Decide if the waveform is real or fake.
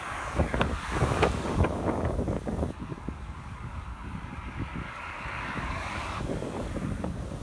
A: fake